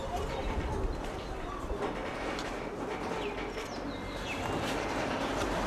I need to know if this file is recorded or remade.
recorded